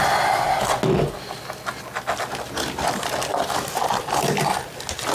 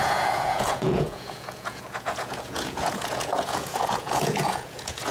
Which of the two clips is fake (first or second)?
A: second